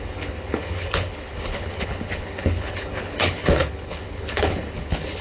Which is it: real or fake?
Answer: fake